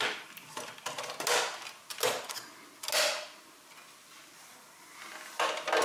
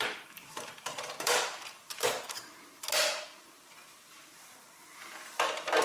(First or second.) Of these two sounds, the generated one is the second